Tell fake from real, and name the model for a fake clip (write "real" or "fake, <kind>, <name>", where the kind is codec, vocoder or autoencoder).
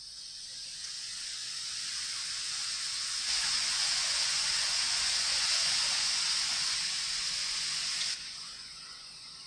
fake, vocoder, Vocos